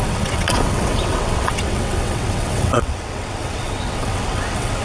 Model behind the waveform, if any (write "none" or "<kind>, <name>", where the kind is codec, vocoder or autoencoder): vocoder, WaveNeXt